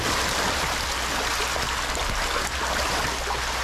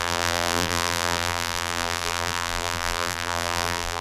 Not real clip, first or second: second